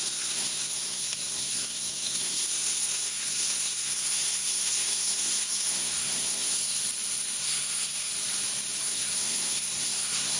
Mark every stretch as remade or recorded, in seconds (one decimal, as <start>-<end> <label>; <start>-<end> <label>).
0.0-6.8 remade; 6.8-7.4 recorded; 7.4-8.1 remade; 8.1-8.8 recorded; 8.8-10.4 remade